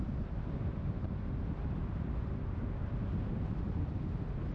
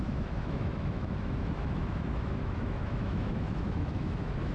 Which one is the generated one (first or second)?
second